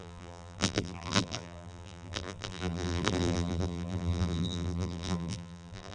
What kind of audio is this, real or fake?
fake